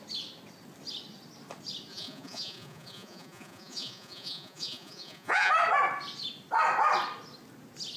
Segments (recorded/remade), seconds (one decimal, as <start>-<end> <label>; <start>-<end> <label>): 0.0-1.9 recorded; 1.9-5.5 remade; 5.5-8.0 recorded